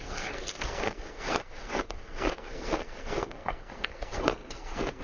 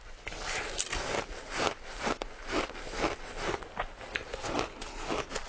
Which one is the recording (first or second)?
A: second